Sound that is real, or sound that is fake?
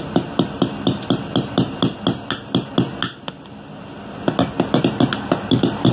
real